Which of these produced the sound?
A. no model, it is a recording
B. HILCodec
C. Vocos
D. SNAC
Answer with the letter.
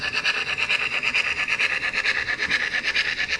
A